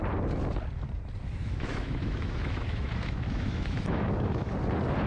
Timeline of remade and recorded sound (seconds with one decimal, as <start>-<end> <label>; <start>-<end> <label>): 0.0-1.4 recorded; 1.4-4.5 remade; 4.5-5.1 recorded